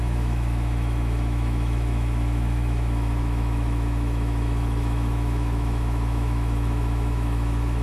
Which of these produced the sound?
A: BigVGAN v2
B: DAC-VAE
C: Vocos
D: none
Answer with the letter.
B